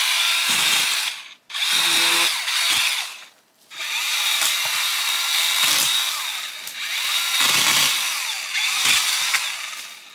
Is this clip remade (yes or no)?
no